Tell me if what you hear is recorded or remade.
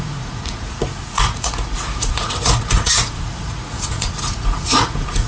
remade